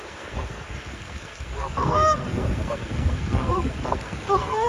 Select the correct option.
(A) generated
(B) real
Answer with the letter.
A